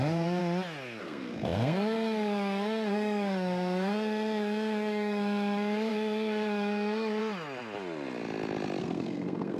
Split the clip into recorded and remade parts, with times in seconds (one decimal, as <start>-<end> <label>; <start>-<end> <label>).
0.0-0.4 remade; 0.4-1.0 recorded; 1.0-7.2 remade; 7.2-8.8 recorded; 8.8-9.6 remade